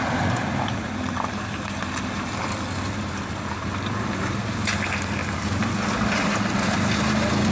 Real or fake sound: real